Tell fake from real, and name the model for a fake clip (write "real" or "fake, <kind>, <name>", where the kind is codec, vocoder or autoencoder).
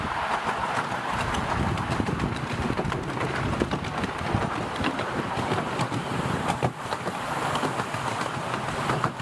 real